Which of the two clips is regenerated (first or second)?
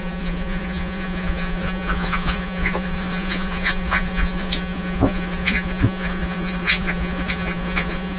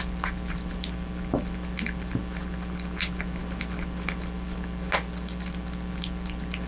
first